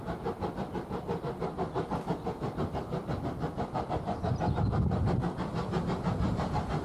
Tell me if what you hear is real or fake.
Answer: real